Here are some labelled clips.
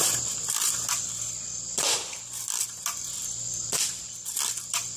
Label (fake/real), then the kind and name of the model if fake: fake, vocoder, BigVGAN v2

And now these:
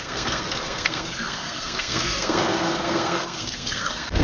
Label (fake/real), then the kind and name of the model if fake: fake, codec, SNAC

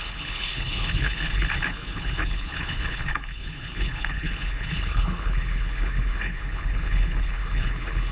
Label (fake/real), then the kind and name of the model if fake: fake, codec, HILCodec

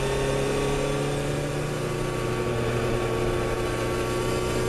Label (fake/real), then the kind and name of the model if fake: real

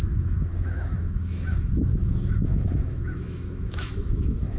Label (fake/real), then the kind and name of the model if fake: fake, autoencoder, DAC-VAE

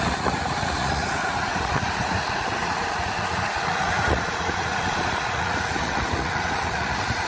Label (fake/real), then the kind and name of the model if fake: fake, vocoder, Vocos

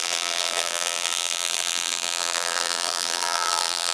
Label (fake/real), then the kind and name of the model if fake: fake, vocoder, BigVGAN v2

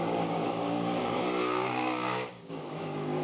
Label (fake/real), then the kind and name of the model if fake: fake, codec, DAC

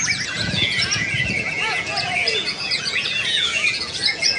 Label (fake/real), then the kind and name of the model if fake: fake, vocoder, Vocos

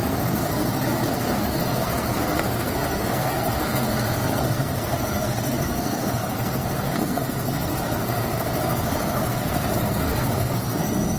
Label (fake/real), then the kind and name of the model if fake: fake, codec, SNAC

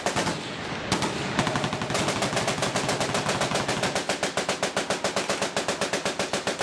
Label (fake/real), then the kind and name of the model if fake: real